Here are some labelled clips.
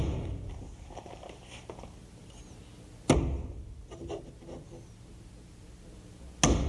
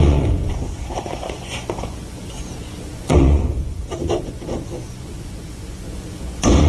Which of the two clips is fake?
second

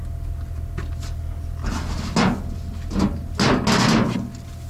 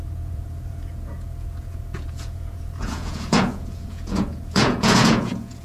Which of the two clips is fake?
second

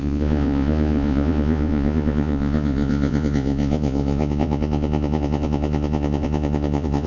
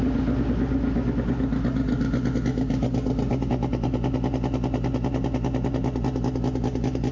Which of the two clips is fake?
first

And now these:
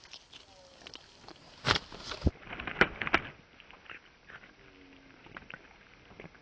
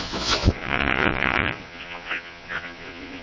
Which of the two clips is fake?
second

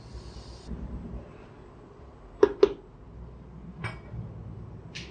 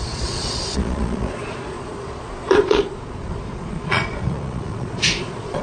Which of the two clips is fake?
second